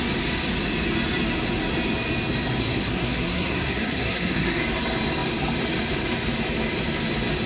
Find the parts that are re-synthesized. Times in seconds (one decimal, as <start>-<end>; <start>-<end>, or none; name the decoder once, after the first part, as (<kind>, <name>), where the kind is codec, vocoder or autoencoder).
2.6-4.6 (codec, SNAC)